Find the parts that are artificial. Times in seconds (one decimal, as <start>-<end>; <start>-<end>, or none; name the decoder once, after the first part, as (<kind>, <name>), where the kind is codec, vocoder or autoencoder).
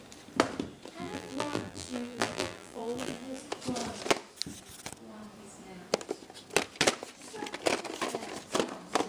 1.0-3.4 (vocoder, BigVGAN v2)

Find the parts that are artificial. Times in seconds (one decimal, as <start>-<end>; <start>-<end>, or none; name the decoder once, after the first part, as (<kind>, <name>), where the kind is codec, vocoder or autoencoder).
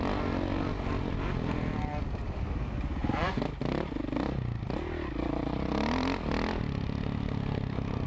3.0-3.9 (vocoder, BigVGAN v2)